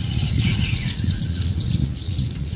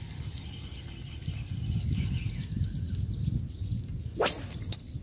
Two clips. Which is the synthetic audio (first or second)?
first